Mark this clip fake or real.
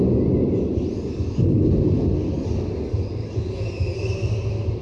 real